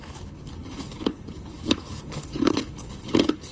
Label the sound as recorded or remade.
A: remade